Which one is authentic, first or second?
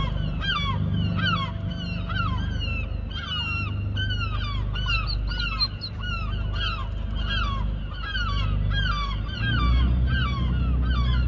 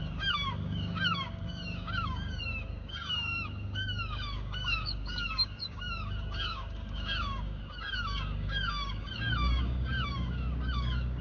first